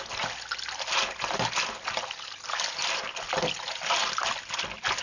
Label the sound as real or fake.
real